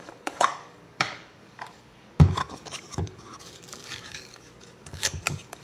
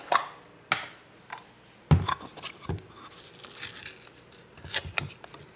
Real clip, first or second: second